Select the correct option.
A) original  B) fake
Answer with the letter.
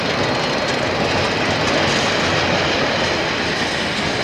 A